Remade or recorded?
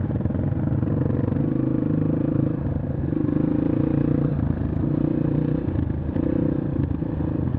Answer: recorded